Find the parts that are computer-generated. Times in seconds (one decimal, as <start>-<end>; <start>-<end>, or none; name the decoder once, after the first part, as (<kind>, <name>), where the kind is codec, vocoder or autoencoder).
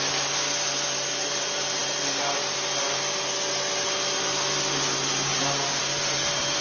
none